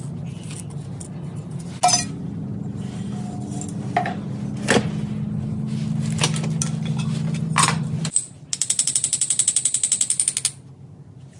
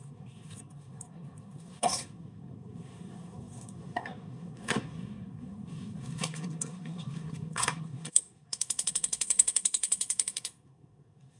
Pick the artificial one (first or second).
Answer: second